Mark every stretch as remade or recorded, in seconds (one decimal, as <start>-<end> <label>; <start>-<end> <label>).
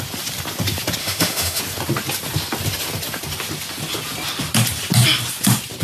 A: 0.0-1.0 recorded; 1.0-1.6 remade; 1.6-5.8 recorded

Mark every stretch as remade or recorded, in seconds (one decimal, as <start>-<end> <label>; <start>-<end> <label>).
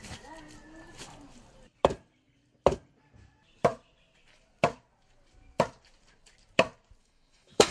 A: 0.0-7.0 recorded; 7.0-7.7 remade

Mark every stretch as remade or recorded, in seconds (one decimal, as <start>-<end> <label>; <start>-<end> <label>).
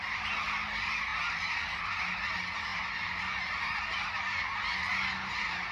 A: 0.0-5.7 recorded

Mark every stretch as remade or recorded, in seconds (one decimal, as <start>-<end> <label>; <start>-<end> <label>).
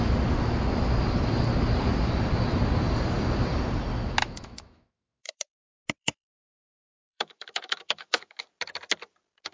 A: 0.0-4.2 recorded; 4.2-5.6 remade; 5.6-6.0 recorded; 6.0-8.4 remade; 8.4-9.5 recorded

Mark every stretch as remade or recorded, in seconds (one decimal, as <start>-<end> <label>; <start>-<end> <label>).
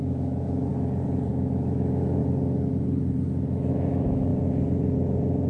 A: 0.0-0.7 remade; 0.7-1.3 recorded; 1.3-2.2 remade; 2.2-3.7 recorded; 3.7-4.3 remade; 4.3-5.5 recorded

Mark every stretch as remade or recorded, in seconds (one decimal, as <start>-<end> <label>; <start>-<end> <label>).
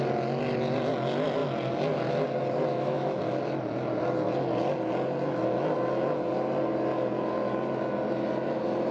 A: 0.0-2.7 recorded; 2.7-3.2 remade; 3.2-8.9 recorded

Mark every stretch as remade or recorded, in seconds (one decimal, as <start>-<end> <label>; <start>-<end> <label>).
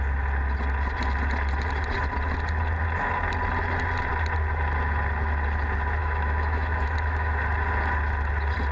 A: 0.0-6.0 recorded; 6.0-7.4 remade; 7.4-8.7 recorded